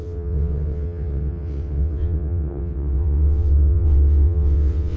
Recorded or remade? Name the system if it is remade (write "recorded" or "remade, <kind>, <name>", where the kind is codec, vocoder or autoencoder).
remade, vocoder, WaveNeXt